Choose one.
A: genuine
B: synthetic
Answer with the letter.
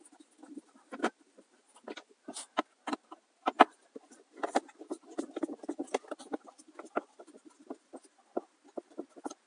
A